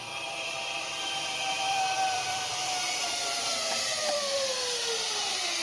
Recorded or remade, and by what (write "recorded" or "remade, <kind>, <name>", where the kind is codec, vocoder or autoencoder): remade, vocoder, BigVGAN v2